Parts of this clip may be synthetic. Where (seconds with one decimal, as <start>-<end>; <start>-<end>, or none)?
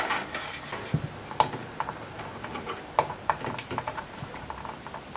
1.6-4.7